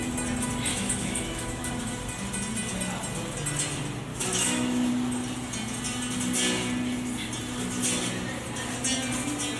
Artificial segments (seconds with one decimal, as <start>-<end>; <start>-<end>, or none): 0.7-1.7; 4.1-4.9

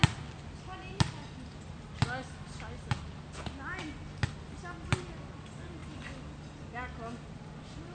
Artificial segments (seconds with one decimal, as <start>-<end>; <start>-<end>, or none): none

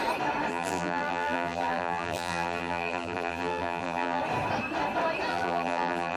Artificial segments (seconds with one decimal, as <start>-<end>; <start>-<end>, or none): 0.5-4.2; 5.3-6.2

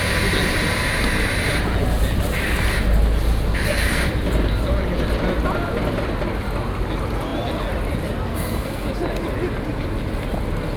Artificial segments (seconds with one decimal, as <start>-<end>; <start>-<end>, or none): 3.5-4.1; 8.3-8.9

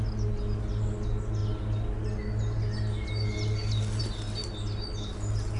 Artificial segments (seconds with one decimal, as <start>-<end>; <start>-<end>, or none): none

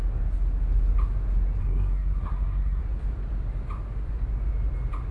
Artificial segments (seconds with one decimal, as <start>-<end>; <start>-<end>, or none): 1.6-2.8